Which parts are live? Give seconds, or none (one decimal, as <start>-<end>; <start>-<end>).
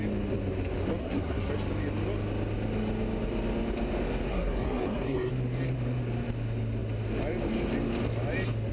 0.0-1.0; 1.5-4.3; 5.3-8.7